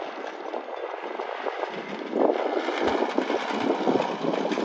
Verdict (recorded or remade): recorded